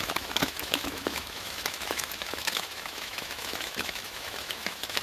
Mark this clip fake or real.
fake